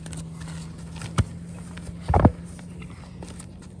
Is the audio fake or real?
real